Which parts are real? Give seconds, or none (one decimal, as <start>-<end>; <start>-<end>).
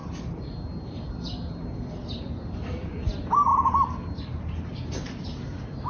0.0-5.9